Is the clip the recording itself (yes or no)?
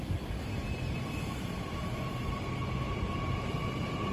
yes